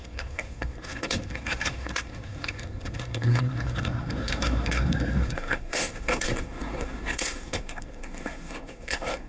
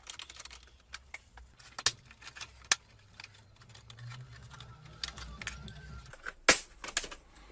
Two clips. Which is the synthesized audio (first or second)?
first